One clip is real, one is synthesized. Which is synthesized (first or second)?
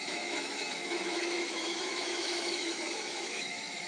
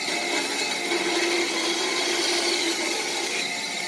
first